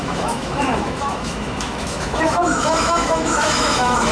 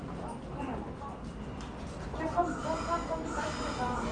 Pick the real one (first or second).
second